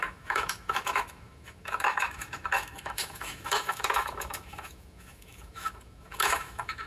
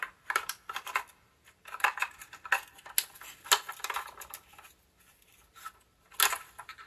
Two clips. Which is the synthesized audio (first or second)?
first